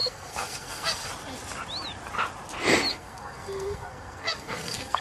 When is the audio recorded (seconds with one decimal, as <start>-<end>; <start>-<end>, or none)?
1.1-2.9